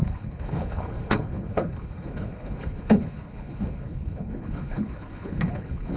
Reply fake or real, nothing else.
fake